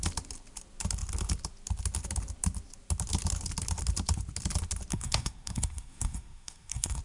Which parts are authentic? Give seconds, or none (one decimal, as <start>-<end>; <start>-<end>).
0.0-4.9